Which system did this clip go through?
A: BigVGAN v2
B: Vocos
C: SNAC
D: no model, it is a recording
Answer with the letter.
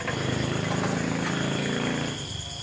D